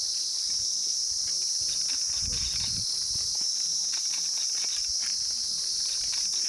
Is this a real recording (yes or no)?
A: yes